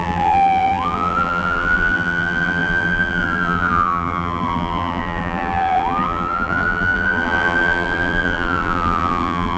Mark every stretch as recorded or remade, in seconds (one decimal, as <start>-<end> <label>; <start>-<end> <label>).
0.0-9.6 remade